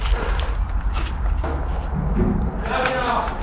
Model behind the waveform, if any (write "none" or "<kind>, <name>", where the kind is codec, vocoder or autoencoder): none